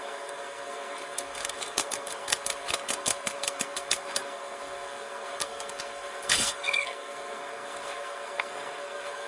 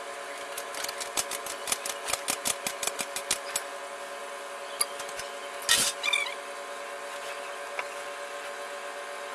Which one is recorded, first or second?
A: second